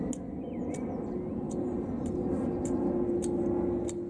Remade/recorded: recorded